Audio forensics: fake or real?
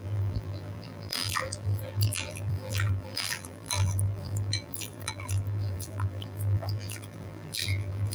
fake